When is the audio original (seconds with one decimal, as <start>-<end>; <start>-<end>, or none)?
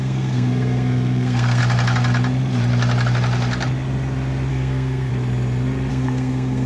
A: 1.6-4.5; 5.1-5.9